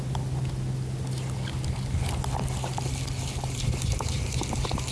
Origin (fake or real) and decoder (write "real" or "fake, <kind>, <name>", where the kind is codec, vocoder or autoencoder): real